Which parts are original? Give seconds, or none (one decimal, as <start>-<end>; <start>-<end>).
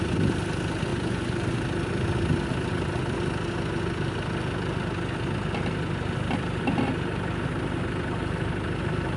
0.0-0.9; 1.4-9.2